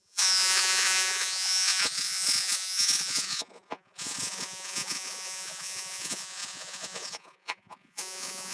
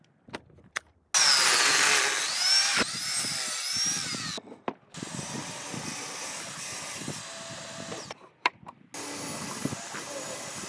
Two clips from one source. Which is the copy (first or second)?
first